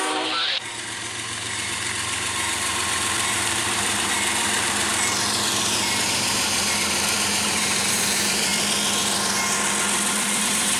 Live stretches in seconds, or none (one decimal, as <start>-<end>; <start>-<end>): 8.5-10.4